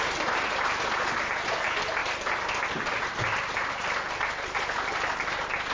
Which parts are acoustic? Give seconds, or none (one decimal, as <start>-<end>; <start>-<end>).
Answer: 0.0-5.7